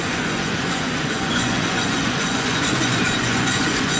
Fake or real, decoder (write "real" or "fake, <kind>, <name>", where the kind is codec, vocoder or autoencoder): fake, vocoder, Vocos